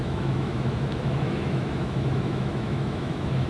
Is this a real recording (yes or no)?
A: no